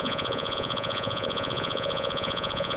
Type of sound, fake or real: fake